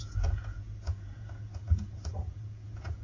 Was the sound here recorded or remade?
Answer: remade